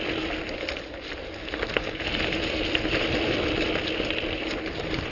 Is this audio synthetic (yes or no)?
no